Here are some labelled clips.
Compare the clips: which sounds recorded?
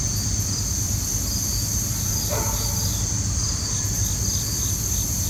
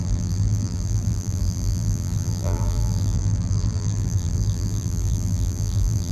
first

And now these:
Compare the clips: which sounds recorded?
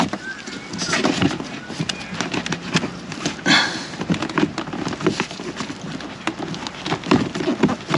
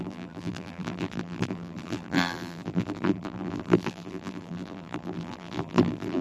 first